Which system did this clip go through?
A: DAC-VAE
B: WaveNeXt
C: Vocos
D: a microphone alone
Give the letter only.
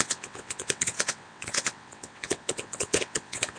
B